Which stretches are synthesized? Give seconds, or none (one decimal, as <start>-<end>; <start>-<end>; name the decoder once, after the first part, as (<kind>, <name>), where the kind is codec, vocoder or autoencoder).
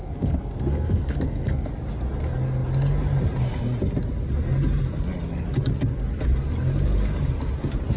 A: 0.0-1.7 (codec, SNAC)